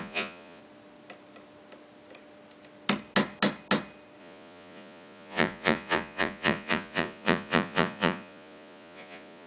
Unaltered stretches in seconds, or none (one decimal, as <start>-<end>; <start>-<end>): 0.6-4.2